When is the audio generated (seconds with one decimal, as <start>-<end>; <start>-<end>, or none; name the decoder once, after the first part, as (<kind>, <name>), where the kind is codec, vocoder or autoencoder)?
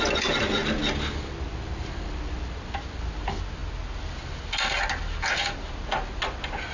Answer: none